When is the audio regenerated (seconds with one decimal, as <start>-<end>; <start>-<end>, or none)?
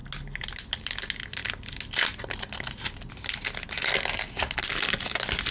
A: none